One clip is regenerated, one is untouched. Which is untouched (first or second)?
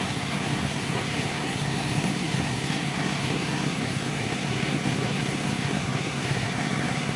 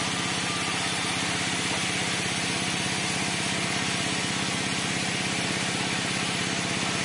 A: second